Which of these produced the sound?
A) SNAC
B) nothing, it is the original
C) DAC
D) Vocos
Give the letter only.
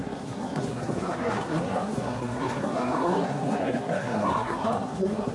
A